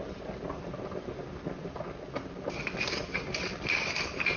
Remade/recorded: recorded